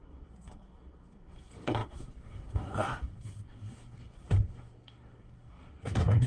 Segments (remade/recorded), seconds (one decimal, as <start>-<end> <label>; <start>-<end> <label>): 0.0-6.3 remade